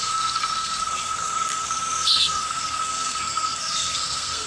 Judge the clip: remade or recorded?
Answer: remade